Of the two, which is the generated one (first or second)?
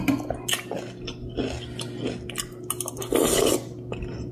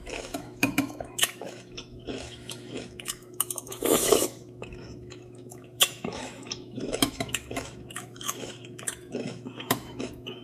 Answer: second